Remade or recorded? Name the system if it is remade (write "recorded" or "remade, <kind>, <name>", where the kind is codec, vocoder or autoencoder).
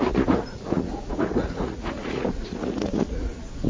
remade, vocoder, Vocos